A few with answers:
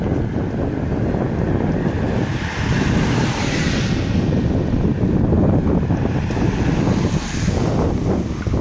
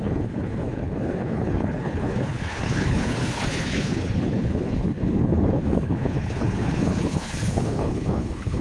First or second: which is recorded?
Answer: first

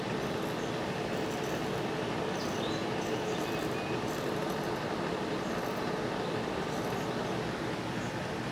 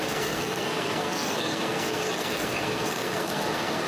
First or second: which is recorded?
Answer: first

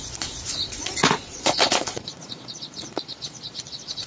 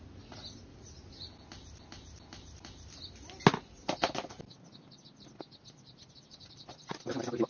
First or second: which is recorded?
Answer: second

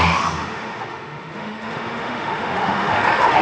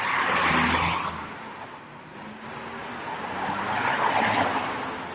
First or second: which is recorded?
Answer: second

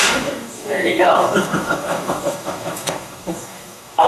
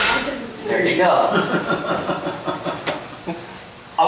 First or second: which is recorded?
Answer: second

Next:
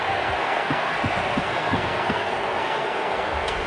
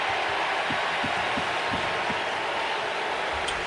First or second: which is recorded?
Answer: second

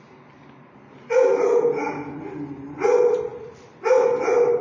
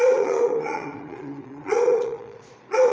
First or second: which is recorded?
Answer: first